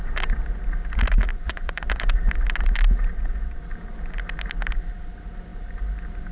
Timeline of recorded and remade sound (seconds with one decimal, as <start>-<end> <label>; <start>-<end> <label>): 0.0-1.3 recorded; 1.3-1.8 remade; 1.8-3.1 recorded; 3.1-3.6 remade; 3.6-6.3 recorded